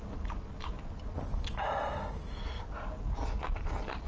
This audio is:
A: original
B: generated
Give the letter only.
A